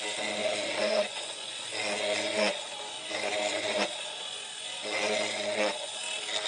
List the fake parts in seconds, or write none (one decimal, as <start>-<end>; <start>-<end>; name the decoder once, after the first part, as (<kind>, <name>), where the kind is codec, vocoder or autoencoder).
0.4-3.1 (vocoder, Vocos); 3.5-6.0